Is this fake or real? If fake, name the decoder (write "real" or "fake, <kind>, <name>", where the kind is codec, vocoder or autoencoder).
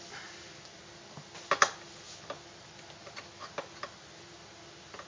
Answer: real